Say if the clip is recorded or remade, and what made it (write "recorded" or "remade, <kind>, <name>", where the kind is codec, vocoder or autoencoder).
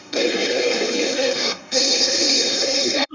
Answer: remade, codec, SNAC